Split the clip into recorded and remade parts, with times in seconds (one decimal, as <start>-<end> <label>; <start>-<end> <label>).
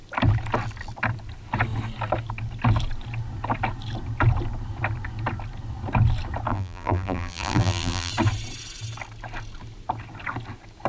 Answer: 0.0-6.5 recorded; 6.5-8.1 remade; 8.1-10.9 recorded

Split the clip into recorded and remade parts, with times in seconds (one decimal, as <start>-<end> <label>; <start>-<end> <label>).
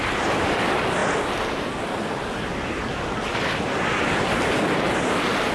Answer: 0.0-5.5 recorded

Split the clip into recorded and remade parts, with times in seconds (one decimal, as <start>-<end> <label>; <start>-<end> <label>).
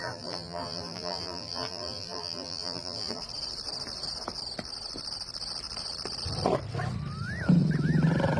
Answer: 0.0-3.2 remade; 3.2-8.4 recorded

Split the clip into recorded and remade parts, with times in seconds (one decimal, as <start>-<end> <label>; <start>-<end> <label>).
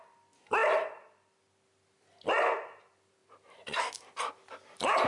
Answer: 0.0-3.2 recorded; 3.2-3.8 remade; 3.8-5.1 recorded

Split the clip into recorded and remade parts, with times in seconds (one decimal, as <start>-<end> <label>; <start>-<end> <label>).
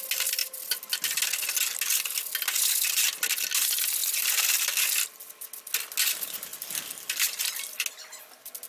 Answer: 0.0-8.7 recorded